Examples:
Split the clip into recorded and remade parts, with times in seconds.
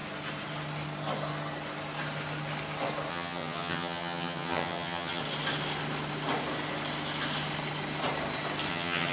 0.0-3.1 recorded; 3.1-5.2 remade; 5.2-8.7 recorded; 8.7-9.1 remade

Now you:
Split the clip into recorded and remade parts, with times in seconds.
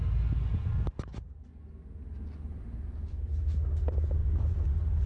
0.0-5.1 recorded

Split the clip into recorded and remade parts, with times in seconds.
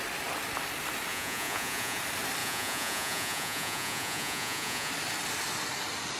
0.0-1.1 recorded; 1.1-2.0 remade; 2.0-2.4 recorded; 2.4-4.9 remade; 4.9-6.2 recorded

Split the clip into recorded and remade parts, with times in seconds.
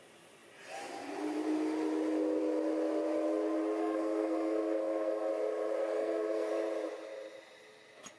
0.0-3.8 recorded; 3.8-5.3 remade; 5.3-5.8 recorded; 5.8-6.5 remade; 6.5-8.2 recorded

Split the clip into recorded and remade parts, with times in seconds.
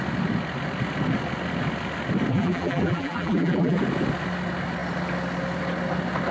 0.0-2.3 recorded; 2.3-3.8 remade; 3.8-6.3 recorded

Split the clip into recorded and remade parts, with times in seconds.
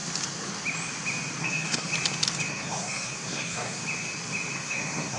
0.0-1.4 recorded; 1.4-1.9 remade; 1.9-2.5 recorded; 2.5-3.8 remade; 3.8-4.6 recorded; 4.6-5.2 remade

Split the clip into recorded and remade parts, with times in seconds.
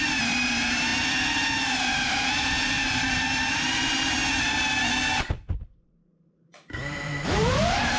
0.0-4.2 remade; 4.2-5.7 recorded; 5.7-8.0 remade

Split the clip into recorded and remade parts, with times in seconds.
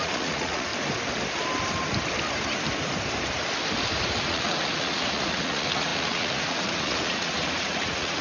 0.0-0.7 remade; 0.7-4.3 recorded; 4.3-8.2 remade